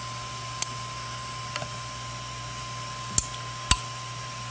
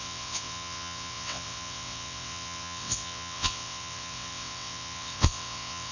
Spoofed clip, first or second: second